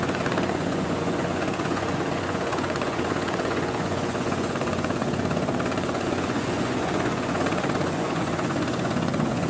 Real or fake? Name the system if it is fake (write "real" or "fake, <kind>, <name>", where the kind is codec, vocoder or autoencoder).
fake, vocoder, Vocos